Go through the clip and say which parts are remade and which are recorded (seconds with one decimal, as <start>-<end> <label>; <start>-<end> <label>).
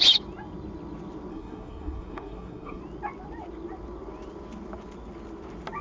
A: 0.0-1.3 recorded; 1.3-2.8 remade; 2.8-5.8 recorded